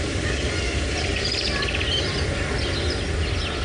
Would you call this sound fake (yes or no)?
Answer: no